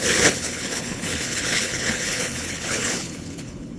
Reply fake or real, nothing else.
fake